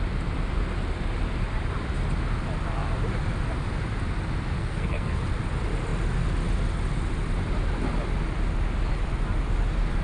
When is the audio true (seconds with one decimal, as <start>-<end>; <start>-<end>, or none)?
0.0-4.6; 5.2-10.0